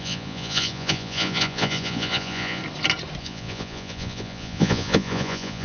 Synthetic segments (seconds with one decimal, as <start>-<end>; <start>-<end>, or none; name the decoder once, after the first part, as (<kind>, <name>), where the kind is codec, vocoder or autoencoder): 0.0-2.6 (vocoder, Vocos); 3.2-5.6